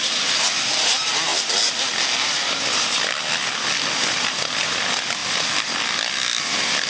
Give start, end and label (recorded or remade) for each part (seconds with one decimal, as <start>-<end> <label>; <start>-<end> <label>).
0.0-1.3 recorded; 1.3-3.5 remade; 3.5-5.2 recorded; 5.2-6.9 remade